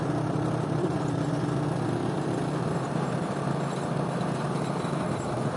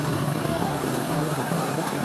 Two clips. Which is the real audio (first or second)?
first